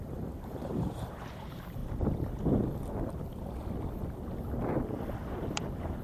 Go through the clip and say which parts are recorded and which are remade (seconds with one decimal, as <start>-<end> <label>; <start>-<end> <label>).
0.0-1.8 remade; 1.8-5.4 recorded; 5.4-6.0 remade